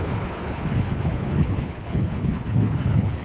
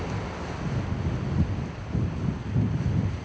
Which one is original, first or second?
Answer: second